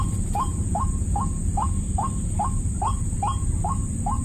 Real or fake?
real